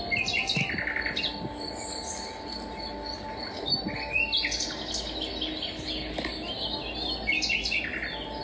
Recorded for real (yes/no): yes